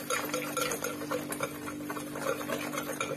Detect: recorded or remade recorded